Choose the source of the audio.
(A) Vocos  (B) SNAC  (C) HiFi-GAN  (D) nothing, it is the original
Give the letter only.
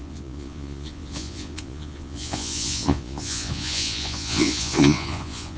A